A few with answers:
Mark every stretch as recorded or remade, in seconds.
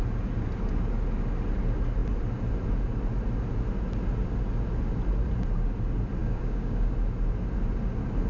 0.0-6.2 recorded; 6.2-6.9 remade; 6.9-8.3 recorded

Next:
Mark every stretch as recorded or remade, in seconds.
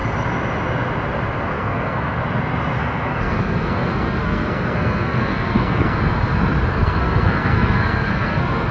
0.0-1.5 recorded; 1.5-2.2 remade; 2.2-2.8 recorded; 2.8-6.0 remade; 6.0-6.7 recorded; 6.7-8.7 remade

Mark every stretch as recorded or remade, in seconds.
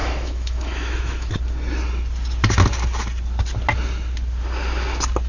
0.0-1.3 remade; 1.3-5.3 recorded